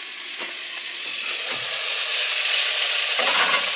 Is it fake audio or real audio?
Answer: fake